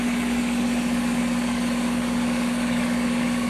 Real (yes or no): no